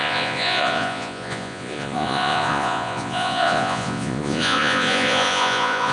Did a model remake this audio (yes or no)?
yes